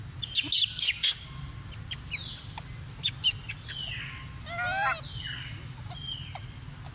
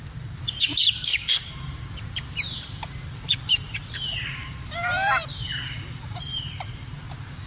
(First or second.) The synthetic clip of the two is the second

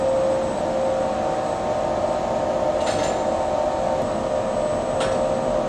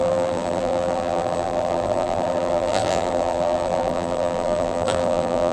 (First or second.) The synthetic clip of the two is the second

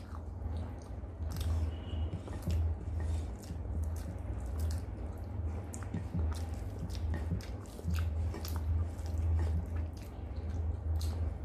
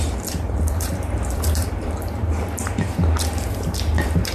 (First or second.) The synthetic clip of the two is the second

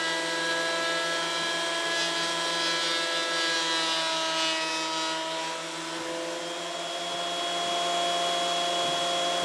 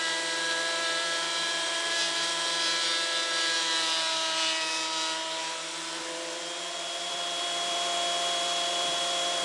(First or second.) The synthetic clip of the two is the second